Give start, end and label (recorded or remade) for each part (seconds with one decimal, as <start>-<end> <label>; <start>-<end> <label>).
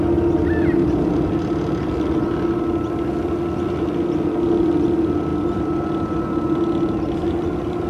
0.0-7.9 recorded